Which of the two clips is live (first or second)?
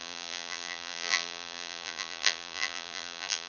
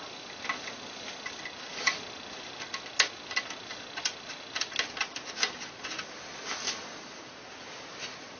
second